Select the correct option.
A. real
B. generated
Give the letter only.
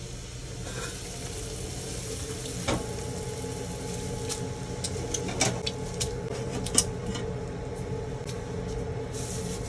A